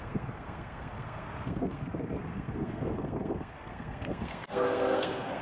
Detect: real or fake fake